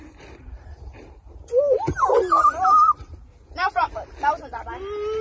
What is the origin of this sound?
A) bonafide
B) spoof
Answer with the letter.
B